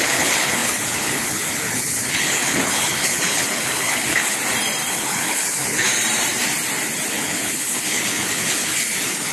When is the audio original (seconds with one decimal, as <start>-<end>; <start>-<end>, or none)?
4.4-4.9; 5.9-7.1